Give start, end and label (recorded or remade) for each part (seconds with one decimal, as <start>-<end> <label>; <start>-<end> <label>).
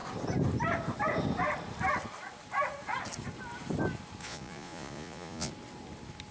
0.0-4.2 recorded; 4.2-5.5 remade; 5.5-6.3 recorded